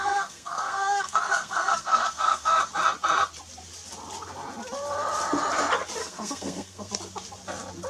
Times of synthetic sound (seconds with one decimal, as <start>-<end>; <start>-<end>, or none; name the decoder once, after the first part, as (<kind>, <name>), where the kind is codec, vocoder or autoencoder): 0.0-2.6 (codec, SNAC); 6.0-6.9